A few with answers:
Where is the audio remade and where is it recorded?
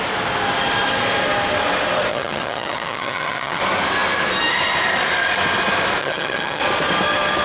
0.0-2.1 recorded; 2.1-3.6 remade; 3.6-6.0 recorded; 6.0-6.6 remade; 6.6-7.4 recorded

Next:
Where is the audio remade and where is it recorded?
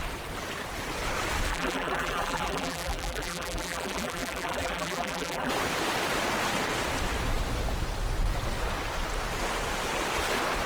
0.0-1.5 recorded; 1.5-5.5 remade; 5.5-10.7 recorded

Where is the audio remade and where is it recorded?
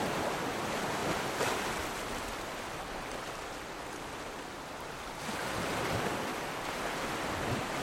0.0-1.0 recorded; 1.0-4.3 remade; 4.3-7.8 recorded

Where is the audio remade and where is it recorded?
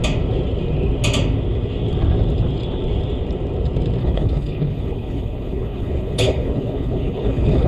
0.0-4.0 recorded; 4.0-7.7 remade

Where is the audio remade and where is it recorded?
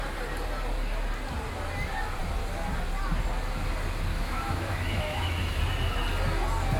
0.0-4.1 recorded; 4.1-5.6 remade; 5.6-6.8 recorded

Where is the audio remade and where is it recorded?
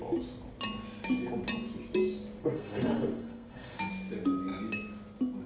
0.0-2.4 recorded; 2.4-3.9 remade; 3.9-5.5 recorded